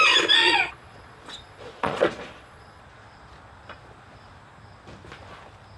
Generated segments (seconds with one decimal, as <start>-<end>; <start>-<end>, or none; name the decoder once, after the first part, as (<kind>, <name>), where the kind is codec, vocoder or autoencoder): 0.4-2.8 (vocoder, Vocos)

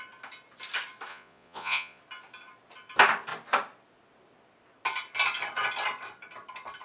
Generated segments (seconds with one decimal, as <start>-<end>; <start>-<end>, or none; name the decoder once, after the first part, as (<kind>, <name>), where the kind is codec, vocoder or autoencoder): 1.1-2.0 (vocoder, Vocos)

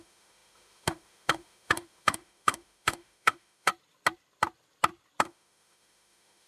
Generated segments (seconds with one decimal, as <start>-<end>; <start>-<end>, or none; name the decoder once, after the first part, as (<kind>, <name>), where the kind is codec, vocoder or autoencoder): 0.0-3.7 (autoencoder, DAC-VAE); 5.2-6.5

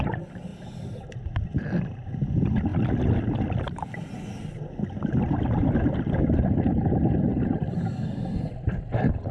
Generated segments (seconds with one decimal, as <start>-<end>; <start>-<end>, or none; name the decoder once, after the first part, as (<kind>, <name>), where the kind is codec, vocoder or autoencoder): none

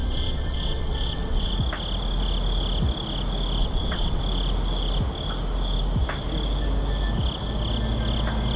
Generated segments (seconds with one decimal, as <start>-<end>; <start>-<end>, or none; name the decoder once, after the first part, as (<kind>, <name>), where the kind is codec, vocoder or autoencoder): 0.0-1.5 (vocoder, WaveNeXt); 3.6-4.2

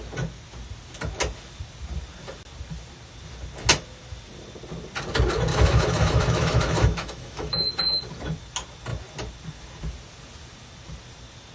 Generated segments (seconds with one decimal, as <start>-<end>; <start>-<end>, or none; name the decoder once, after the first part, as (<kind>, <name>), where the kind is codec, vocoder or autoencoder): 5.5-7.7 (autoencoder, DAC-VAE)

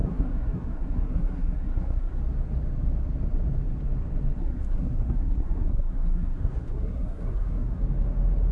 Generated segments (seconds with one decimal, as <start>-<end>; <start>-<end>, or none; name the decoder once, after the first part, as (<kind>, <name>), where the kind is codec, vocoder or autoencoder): 0.0-2.2 (codec, SNAC); 4.4-7.8

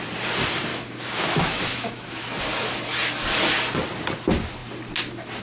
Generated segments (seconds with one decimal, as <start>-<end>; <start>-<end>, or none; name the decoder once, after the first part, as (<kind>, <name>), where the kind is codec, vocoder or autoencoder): 0.7-2.2 (autoencoder, DAC-VAE)